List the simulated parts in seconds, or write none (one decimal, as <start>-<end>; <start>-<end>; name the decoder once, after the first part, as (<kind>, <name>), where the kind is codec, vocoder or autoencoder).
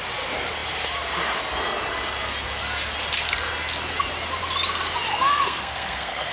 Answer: 5.1-6.3 (codec, SNAC)